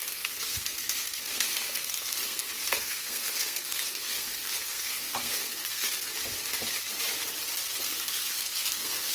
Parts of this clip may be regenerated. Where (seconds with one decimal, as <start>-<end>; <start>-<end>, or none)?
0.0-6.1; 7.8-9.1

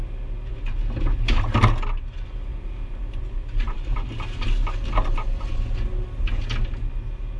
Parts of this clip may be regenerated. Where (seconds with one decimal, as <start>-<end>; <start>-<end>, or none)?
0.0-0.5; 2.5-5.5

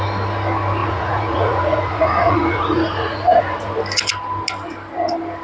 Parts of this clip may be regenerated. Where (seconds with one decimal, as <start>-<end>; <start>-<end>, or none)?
0.8-3.7

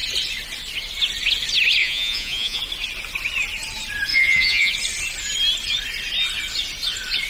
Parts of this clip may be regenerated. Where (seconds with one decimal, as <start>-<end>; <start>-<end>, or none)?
1.8-2.6; 4.1-4.7